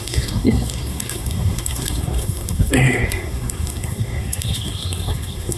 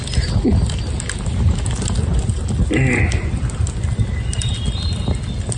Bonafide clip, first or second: second